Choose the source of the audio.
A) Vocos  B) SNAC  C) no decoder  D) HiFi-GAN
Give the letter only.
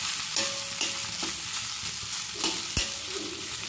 C